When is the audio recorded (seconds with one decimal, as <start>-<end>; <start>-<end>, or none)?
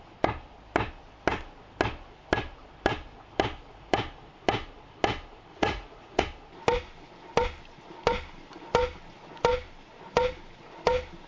0.0-5.5; 6.2-11.3